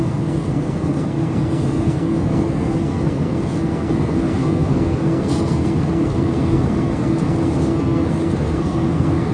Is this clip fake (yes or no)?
yes